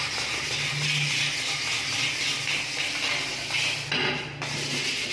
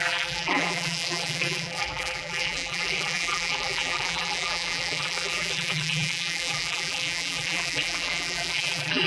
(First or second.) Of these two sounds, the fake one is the second